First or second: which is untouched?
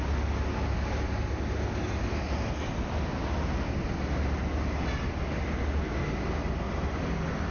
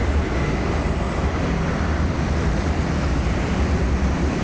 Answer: first